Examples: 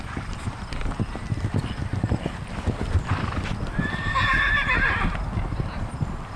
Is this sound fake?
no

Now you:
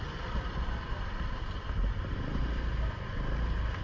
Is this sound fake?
no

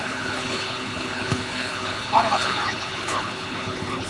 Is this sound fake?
yes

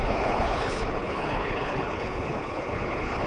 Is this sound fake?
yes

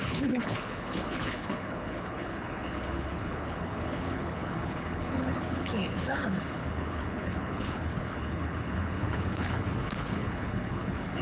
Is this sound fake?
yes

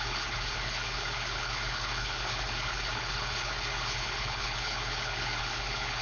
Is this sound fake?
yes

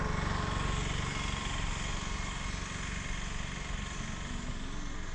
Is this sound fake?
no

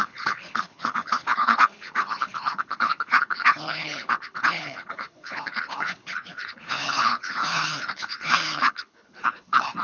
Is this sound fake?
yes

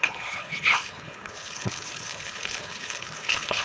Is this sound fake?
yes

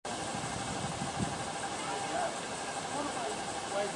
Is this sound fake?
no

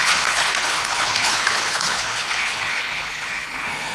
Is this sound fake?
yes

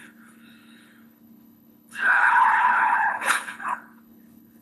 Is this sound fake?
yes